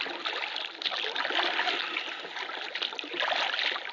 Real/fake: real